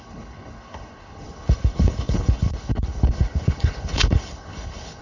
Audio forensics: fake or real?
fake